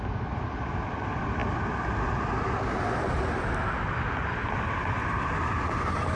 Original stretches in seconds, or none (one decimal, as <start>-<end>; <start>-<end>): 0.0-6.2